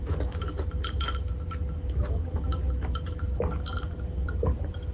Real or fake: real